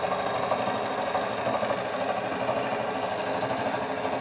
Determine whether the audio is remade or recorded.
recorded